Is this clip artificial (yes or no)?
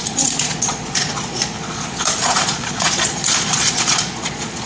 yes